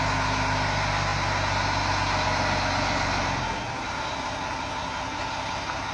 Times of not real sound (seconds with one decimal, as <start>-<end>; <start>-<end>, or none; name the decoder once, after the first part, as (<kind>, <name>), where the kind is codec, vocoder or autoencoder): none